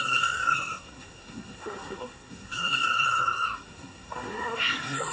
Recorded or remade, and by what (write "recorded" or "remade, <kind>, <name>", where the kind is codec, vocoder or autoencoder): remade, codec, SNAC